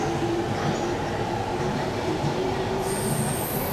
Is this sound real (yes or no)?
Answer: yes